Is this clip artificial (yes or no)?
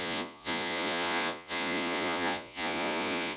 yes